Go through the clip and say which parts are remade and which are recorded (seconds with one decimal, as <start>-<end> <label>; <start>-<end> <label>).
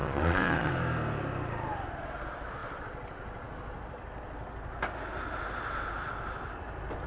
0.0-0.7 remade; 0.7-7.1 recorded